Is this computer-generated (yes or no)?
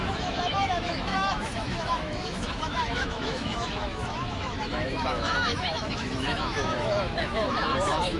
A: yes